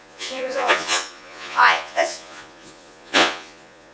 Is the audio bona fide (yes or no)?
no